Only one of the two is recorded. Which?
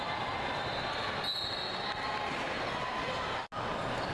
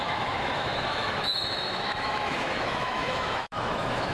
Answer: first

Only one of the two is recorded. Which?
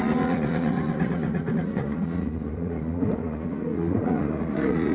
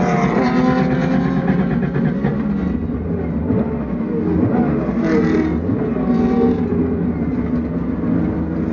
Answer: second